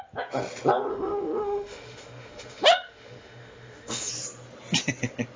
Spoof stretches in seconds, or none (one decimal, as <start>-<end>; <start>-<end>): 0.9-4.1